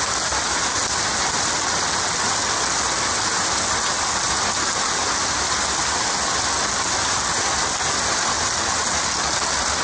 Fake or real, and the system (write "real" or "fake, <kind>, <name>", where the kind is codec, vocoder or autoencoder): real